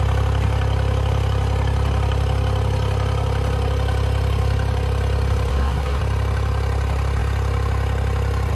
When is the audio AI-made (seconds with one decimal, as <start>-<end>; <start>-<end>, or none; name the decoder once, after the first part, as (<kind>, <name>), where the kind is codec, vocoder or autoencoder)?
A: 5.5-6.0 (codec, SNAC)